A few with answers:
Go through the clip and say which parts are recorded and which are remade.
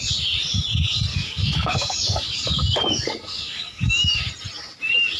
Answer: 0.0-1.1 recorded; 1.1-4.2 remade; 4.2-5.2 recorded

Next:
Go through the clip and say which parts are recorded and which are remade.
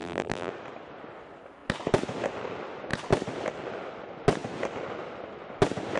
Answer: 0.0-0.5 remade; 0.5-6.0 recorded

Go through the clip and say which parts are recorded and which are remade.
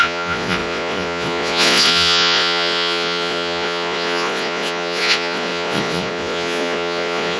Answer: 0.0-7.4 remade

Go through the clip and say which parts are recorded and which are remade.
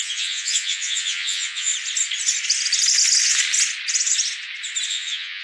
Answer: 0.0-1.7 remade; 1.7-4.9 recorded; 4.9-5.4 remade